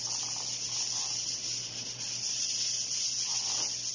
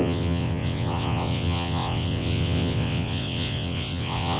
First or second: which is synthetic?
second